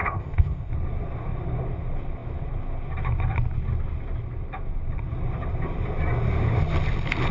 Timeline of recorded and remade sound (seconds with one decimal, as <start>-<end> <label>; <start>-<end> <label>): 0.0-0.7 remade; 0.7-7.3 recorded